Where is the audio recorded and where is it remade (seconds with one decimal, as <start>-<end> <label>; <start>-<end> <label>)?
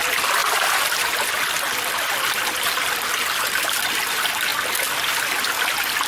0.0-0.4 remade; 0.4-4.1 recorded; 4.1-4.5 remade; 4.5-6.1 recorded